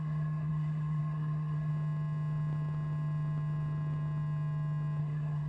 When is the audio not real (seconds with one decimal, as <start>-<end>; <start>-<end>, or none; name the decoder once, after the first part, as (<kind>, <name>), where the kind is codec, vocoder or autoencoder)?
0.0-1.7 (codec, SNAC); 5.0-5.5

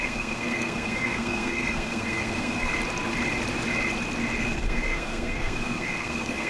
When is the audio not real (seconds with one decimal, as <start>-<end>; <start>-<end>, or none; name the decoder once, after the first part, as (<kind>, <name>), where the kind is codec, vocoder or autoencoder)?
0.0-2.7 (codec, SNAC); 4.4-6.5

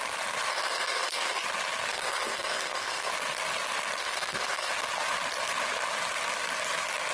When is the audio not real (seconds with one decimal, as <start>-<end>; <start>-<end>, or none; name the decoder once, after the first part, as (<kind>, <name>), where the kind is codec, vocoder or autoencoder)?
0.5-1.4 (codec, SNAC); 1.9-3.1; 4.0-4.7

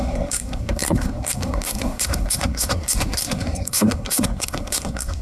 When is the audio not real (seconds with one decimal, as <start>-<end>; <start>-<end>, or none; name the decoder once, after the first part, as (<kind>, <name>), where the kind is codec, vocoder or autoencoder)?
0.0-5.2 (codec, SNAC)